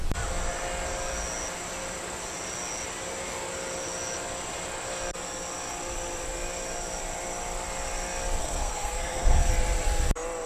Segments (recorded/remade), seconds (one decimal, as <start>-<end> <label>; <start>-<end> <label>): 0.0-8.4 recorded; 8.4-9.5 remade; 9.5-10.5 recorded